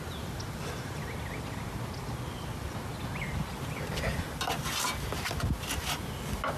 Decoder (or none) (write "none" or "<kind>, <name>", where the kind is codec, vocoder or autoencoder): none